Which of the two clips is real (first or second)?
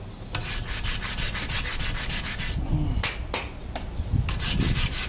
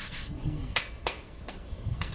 first